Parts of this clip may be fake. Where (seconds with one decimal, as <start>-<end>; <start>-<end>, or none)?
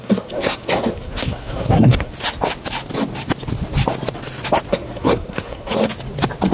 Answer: 0.0-2.1; 4.7-5.9